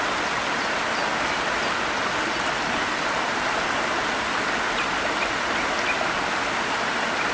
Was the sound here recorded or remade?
recorded